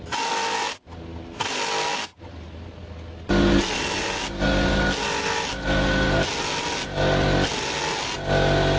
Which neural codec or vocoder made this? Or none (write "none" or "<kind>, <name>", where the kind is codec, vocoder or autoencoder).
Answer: none